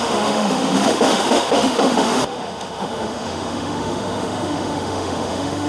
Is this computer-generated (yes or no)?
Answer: yes